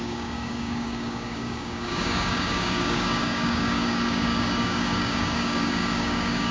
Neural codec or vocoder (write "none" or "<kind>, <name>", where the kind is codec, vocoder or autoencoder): codec, DAC